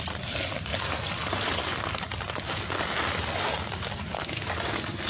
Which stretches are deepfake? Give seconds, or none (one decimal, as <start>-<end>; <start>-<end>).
none